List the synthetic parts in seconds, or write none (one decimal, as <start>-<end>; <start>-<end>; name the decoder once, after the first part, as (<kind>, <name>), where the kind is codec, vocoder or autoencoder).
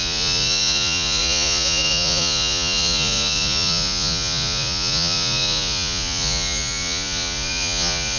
0.0-8.2 (vocoder, Vocos)